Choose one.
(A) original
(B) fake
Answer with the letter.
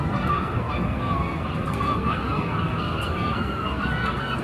B